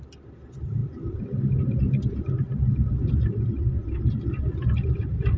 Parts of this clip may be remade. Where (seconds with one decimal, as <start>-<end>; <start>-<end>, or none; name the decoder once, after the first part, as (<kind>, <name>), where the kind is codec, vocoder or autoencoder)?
none